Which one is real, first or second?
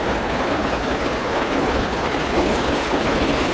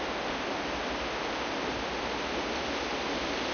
second